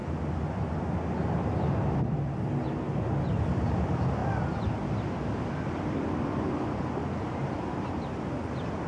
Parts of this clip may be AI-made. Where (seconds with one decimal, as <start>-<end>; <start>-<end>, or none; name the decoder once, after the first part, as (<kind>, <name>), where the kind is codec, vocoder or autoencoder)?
none